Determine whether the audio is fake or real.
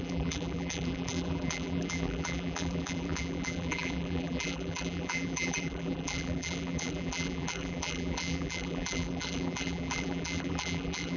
fake